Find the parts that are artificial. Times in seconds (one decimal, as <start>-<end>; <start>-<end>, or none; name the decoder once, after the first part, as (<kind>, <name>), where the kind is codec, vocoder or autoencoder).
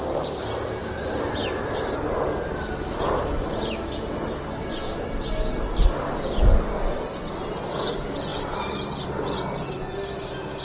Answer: none